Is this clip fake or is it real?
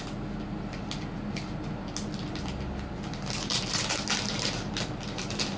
real